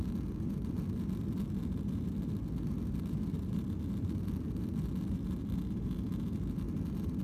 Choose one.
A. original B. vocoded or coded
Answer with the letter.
A